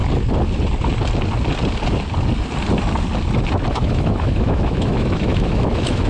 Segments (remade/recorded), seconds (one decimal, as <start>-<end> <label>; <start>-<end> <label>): 0.0-3.7 recorded; 3.7-6.1 remade